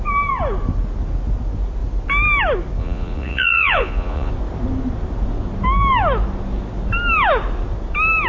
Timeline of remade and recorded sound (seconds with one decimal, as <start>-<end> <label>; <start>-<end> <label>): 0.0-2.8 recorded; 2.8-4.3 remade; 4.3-8.3 recorded